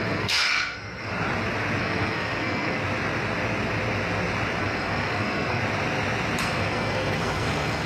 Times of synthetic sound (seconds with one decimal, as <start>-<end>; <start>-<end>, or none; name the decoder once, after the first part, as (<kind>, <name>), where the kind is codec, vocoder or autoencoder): 0.0-1.1 (codec, SNAC); 1.8-2.8; 4.6-5.6; 6.4-7.9